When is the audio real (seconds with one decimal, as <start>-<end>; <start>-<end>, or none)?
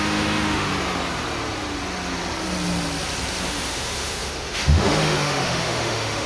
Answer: 0.7-3.4